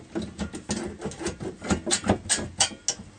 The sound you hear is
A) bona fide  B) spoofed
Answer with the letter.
A